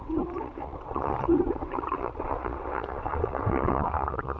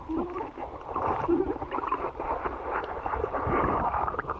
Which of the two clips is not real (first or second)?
first